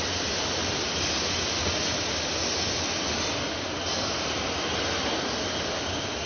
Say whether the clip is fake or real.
real